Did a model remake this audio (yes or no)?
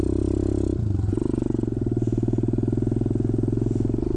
no